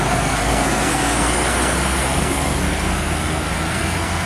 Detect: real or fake fake